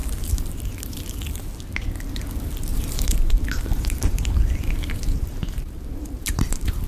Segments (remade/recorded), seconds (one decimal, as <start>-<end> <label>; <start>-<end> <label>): 0.0-0.9 remade; 0.9-2.7 recorded; 2.7-6.9 remade